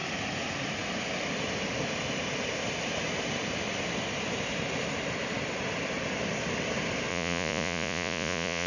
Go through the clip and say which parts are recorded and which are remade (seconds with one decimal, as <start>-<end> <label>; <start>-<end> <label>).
0.0-7.1 recorded; 7.1-8.7 remade